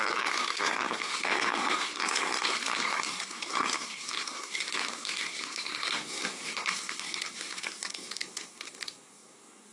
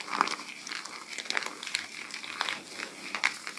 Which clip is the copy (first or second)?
first